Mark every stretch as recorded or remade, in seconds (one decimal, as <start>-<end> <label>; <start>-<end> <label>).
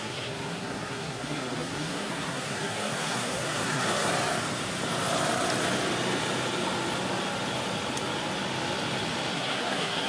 0.0-4.1 remade; 4.1-9.3 recorded; 9.3-10.1 remade